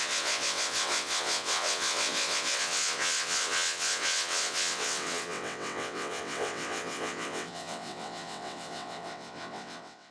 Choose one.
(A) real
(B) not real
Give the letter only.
B